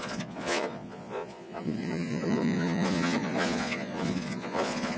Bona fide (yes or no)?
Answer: no